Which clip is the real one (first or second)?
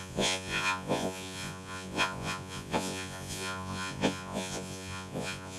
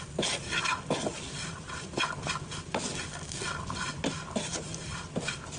second